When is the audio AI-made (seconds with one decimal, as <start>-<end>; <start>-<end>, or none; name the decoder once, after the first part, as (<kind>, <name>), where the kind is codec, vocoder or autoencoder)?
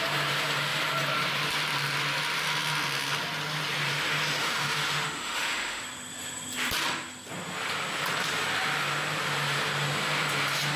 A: 4.4-5.8 (autoencoder, DAC-VAE)